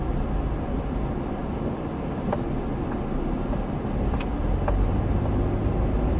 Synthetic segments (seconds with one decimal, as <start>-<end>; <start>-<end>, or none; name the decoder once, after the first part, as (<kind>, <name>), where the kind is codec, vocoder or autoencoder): none

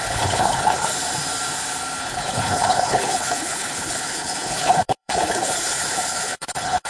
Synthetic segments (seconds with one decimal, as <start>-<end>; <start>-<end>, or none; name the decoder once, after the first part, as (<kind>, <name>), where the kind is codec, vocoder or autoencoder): 0.0-0.9 (codec, HILCodec); 2.0-6.9

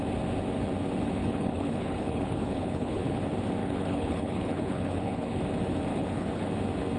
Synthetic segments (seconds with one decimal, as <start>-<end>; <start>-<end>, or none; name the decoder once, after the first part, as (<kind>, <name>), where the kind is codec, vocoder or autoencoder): 1.2-3.2 (codec, HILCodec); 3.6-5.4; 5.9-6.5

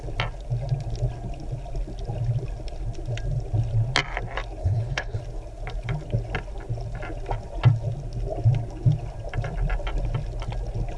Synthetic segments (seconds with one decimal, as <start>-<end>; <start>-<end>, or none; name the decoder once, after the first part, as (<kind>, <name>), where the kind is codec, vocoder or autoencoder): 4.6-5.2 (codec, HILCodec)

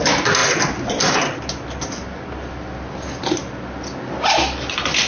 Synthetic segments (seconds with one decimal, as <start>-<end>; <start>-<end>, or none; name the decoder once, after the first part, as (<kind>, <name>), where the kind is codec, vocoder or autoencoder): none

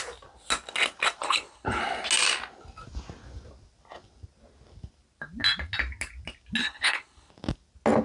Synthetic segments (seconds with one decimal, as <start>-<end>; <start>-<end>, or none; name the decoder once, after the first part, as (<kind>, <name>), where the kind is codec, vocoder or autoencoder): 1.2-1.8 (codec, HILCodec); 6.6-7.3

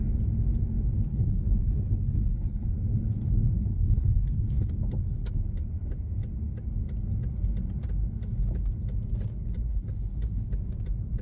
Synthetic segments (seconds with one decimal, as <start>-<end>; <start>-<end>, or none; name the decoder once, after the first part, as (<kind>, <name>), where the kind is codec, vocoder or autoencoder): 1.1-2.7 (codec, HILCodec); 3.6-4.7; 9.7-10.5

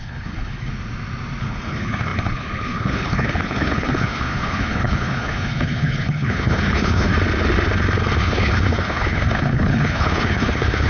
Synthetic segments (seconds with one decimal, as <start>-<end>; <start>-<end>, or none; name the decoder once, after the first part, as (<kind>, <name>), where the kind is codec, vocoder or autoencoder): 0.0-0.7 (codec, HILCodec); 1.4-7.1; 8.2-10.9